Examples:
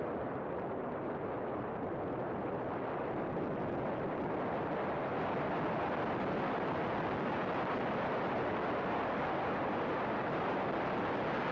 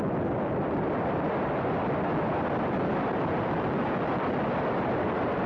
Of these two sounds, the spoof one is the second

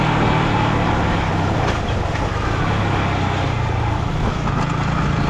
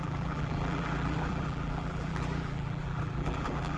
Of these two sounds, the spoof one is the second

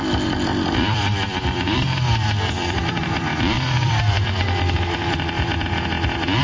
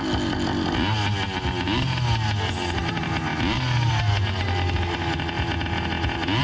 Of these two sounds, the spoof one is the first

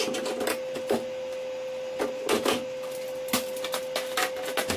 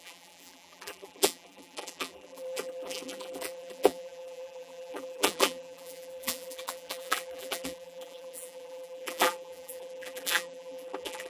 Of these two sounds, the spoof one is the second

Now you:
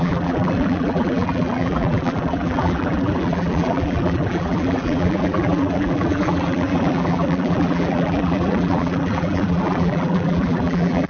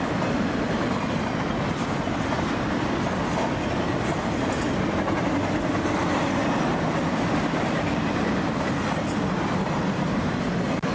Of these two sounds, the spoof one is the first